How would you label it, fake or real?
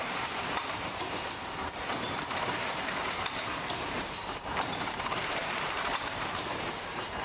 fake